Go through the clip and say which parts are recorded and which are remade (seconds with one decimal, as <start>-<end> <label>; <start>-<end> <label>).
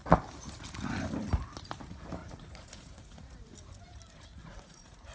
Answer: 0.0-2.2 recorded; 2.2-3.5 remade; 3.5-4.4 recorded; 4.4-5.1 remade